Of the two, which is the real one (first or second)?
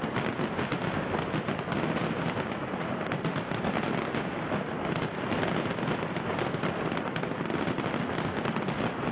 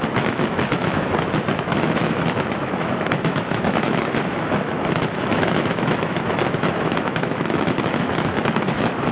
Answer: first